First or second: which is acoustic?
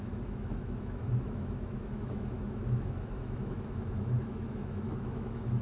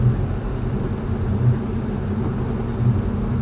second